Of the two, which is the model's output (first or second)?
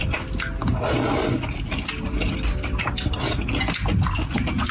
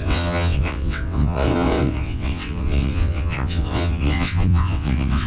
second